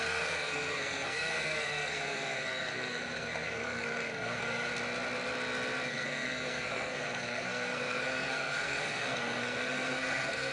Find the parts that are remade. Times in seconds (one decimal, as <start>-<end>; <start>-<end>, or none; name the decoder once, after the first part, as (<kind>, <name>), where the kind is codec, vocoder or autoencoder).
0.0-4.7 (codec, SNAC); 5.9-10.5